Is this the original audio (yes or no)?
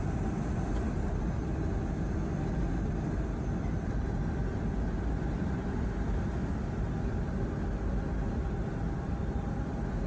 yes